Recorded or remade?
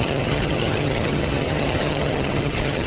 remade